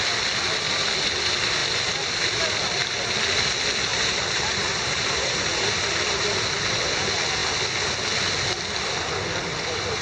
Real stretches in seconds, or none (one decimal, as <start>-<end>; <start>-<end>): 0.0-3.9; 5.4-10.0